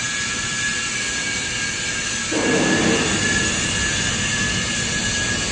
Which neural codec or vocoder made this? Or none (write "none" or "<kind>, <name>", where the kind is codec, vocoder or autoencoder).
none